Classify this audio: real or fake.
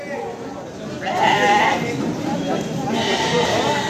fake